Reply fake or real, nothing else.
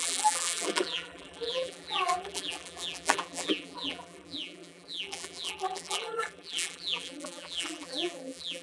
fake